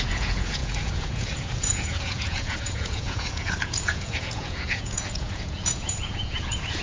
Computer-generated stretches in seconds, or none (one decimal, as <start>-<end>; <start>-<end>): 0.0-6.8